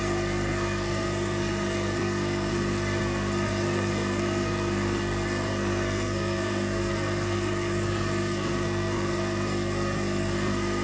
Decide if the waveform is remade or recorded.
remade